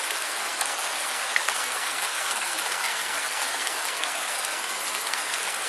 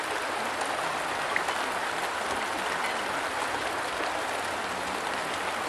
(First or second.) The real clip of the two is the second